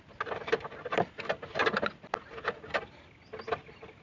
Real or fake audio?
real